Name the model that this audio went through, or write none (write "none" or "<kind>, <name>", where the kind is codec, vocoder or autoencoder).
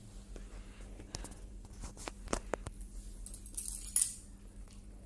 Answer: none